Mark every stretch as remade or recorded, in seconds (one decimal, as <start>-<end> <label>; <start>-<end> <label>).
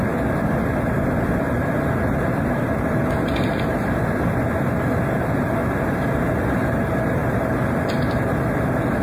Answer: 0.0-9.0 recorded